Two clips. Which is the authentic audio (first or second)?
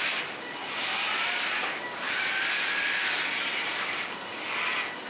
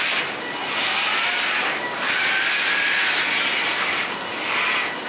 second